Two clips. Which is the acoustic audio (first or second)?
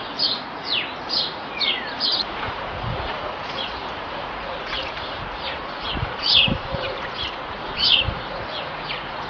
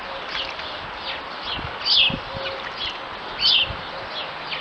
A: second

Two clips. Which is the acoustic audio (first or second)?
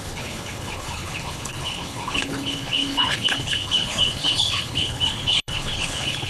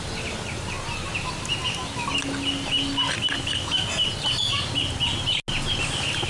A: second